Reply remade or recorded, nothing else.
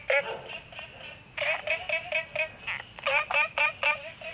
recorded